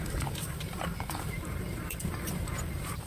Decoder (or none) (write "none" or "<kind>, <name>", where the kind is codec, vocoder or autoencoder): vocoder, BigVGAN v2